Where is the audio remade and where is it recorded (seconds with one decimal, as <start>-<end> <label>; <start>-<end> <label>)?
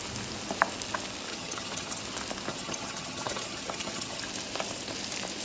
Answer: 0.0-1.3 recorded; 1.3-2.0 remade; 2.0-2.5 recorded; 2.5-4.2 remade; 4.2-5.4 recorded